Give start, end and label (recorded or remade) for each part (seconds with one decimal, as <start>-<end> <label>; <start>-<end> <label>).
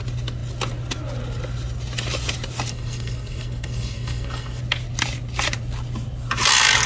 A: 0.0-2.7 recorded; 2.7-4.6 remade; 4.6-6.9 recorded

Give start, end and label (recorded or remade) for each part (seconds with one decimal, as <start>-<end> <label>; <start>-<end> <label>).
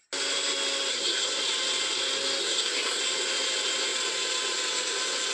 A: 0.0-0.9 recorded; 0.9-1.4 remade; 1.4-2.4 recorded; 2.4-3.0 remade; 3.0-5.3 recorded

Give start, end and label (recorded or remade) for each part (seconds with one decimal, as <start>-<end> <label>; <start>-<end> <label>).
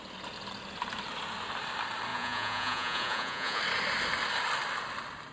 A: 0.0-2.1 recorded; 2.1-3.6 remade; 3.6-5.3 recorded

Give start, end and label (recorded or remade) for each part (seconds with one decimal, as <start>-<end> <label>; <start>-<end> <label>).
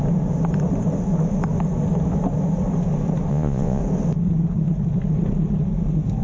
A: 0.0-3.3 recorded; 3.3-3.8 remade; 3.8-6.2 recorded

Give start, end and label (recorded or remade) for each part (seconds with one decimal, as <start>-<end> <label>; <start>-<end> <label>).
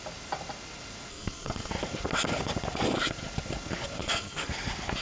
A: 0.0-1.1 recorded; 1.1-1.7 remade; 1.7-4.0 recorded; 4.0-4.5 remade; 4.5-5.0 recorded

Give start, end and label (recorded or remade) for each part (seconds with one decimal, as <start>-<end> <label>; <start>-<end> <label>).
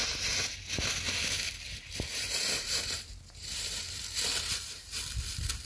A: 0.0-0.7 remade; 0.7-1.7 recorded; 1.7-5.0 remade; 5.0-5.6 recorded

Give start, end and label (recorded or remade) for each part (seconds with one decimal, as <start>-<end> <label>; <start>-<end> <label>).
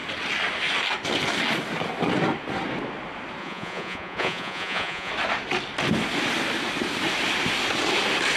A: 0.0-3.4 recorded; 3.4-5.1 remade; 5.1-8.4 recorded